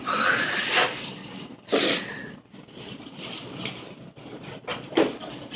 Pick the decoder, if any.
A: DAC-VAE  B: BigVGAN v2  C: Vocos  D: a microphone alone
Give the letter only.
D